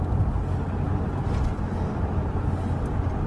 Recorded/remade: recorded